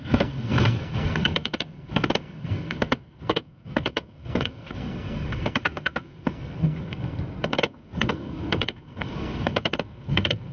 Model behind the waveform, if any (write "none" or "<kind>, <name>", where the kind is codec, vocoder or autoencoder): codec, SNAC